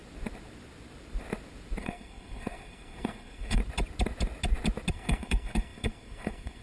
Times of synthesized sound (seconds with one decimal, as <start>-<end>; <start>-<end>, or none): 1.8-3.6; 4.9-6.6

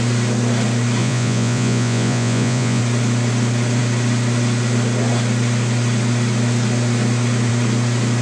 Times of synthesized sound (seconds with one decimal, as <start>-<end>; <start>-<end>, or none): 1.0-2.8

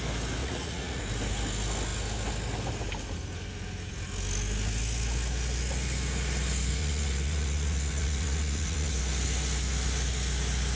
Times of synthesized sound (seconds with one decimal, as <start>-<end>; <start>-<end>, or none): 0.4-1.0; 6.8-8.9